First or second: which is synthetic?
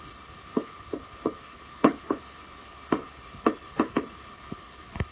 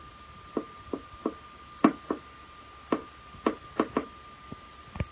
first